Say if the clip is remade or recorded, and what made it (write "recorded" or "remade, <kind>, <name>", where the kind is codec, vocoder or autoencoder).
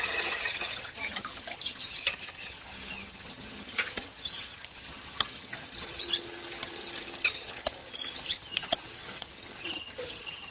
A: remade, vocoder, HiFi-GAN